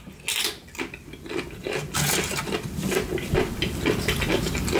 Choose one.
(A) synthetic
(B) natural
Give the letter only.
B